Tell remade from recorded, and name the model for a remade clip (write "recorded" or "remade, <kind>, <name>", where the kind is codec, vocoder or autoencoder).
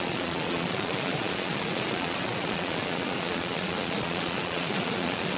remade, vocoder, Vocos